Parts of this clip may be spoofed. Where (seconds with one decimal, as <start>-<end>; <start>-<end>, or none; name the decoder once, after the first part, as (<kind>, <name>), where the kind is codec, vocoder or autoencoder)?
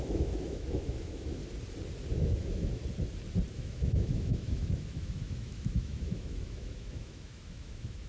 0.0-1.4 (autoencoder, DAC-VAE); 2.1-2.8; 3.5-8.1